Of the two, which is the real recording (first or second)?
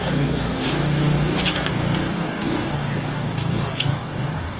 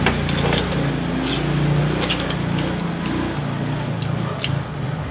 second